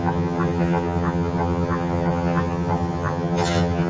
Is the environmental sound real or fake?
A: fake